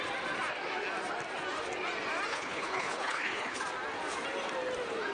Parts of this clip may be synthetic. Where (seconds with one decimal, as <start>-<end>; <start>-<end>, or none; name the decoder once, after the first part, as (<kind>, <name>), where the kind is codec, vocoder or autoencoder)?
2.3-3.6 (codec, HILCodec)